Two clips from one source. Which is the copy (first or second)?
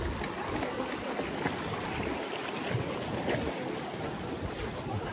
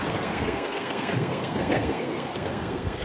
second